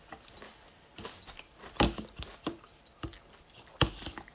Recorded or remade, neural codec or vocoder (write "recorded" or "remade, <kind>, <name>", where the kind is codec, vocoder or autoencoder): recorded